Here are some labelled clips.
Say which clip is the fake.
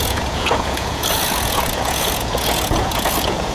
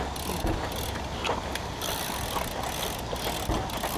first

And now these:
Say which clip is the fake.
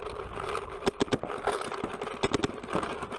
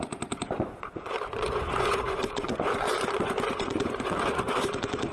second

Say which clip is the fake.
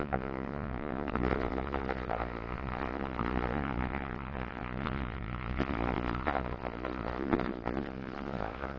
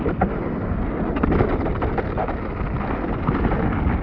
first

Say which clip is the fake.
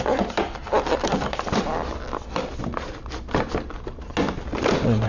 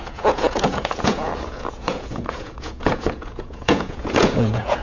second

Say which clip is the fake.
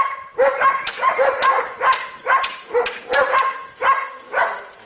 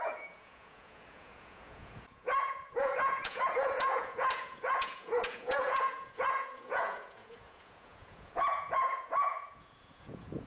second